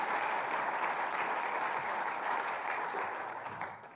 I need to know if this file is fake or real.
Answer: real